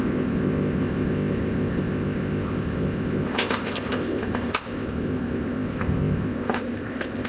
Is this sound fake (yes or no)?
yes